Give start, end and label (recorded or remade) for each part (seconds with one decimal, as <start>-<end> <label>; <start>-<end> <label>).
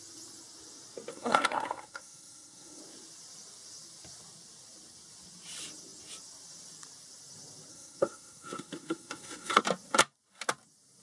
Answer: 0.0-1.1 recorded; 1.1-2.8 remade; 2.8-7.7 recorded; 7.7-9.6 remade; 9.6-11.0 recorded